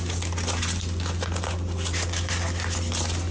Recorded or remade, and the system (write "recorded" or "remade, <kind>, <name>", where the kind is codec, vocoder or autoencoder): recorded